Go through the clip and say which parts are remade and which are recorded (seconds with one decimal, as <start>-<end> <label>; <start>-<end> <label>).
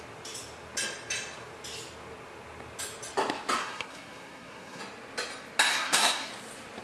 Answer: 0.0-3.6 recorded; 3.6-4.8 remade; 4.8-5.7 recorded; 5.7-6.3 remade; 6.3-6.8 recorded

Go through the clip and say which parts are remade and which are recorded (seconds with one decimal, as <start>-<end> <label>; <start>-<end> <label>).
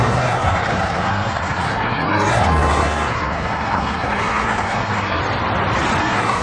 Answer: 0.0-5.2 remade; 5.2-6.0 recorded; 6.0-6.4 remade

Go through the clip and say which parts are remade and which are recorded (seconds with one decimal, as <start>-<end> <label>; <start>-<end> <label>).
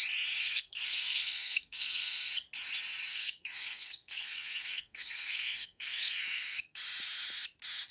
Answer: 0.0-0.4 recorded; 0.4-2.3 remade; 2.3-3.1 recorded; 3.1-6.8 remade; 6.8-7.9 recorded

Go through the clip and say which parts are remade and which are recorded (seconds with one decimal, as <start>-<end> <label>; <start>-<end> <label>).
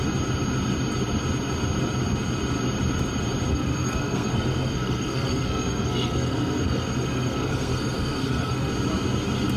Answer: 0.0-3.5 recorded; 3.5-8.7 remade; 8.7-9.6 recorded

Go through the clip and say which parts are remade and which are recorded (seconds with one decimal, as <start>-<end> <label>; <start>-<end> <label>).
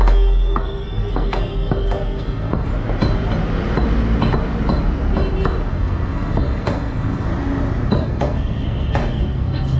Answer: 0.0-2.7 remade; 2.7-5.7 recorded; 5.7-7.3 remade; 7.3-7.9 recorded; 7.9-9.8 remade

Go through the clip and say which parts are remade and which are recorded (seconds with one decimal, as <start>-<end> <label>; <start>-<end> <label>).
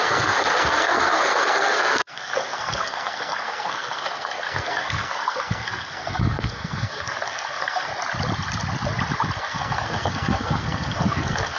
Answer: 0.0-7.9 remade; 7.9-9.4 recorded; 9.4-11.6 remade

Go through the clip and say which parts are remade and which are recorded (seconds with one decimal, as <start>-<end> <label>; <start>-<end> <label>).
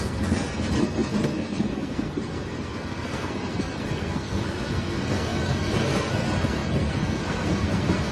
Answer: 0.0-8.1 remade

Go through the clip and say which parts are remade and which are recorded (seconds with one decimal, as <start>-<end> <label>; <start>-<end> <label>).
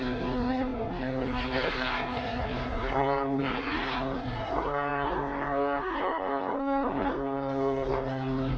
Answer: 0.0-8.6 remade